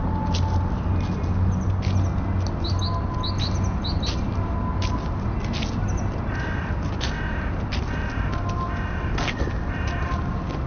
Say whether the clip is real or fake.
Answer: real